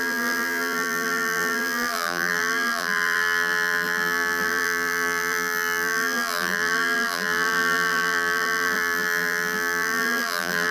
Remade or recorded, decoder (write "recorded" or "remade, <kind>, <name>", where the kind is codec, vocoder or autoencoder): remade, vocoder, BigVGAN v2